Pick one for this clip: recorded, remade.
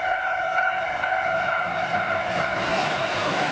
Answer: remade